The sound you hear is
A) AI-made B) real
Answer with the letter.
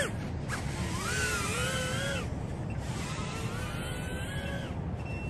B